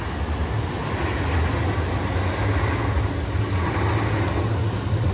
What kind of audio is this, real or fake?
real